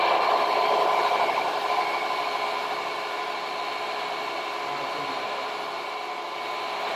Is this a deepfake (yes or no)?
yes